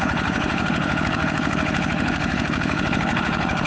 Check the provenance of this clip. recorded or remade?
remade